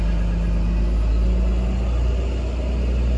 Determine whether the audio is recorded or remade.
recorded